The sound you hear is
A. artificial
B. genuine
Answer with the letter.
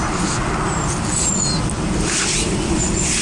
B